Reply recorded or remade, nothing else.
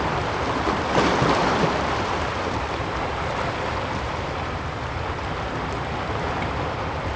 recorded